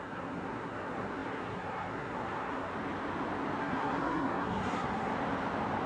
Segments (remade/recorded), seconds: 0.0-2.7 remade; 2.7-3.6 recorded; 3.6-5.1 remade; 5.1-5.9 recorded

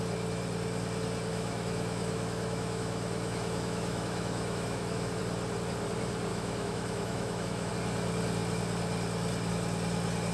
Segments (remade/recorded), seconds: 0.0-1.3 recorded; 1.3-5.2 remade; 5.2-6.3 recorded; 6.3-7.7 remade; 7.7-10.3 recorded

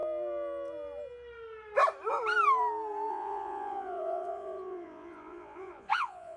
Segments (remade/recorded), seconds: 0.0-3.1 recorded; 3.1-6.4 remade

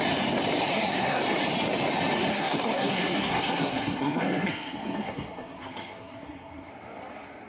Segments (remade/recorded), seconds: 0.0-0.7 recorded; 0.7-1.2 remade; 1.2-2.3 recorded; 2.3-6.7 remade; 6.7-7.5 recorded

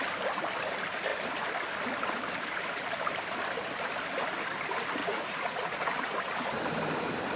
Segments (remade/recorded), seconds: 0.0-5.0 recorded; 5.0-6.1 remade; 6.1-7.4 recorded

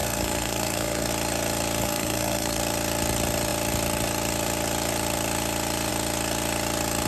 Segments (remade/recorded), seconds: 0.0-1.1 remade; 1.1-1.8 recorded; 1.8-2.6 remade; 2.6-7.1 recorded

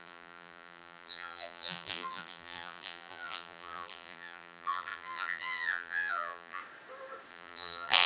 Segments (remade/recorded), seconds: 0.0-6.6 remade; 6.6-7.3 recorded; 7.3-8.1 remade

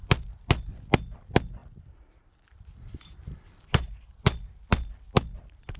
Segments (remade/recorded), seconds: 0.0-1.6 recorded; 1.6-4.1 remade; 4.1-5.8 recorded